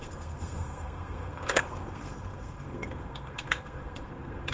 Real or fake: fake